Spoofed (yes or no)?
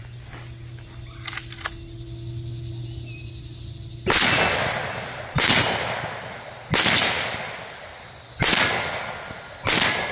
no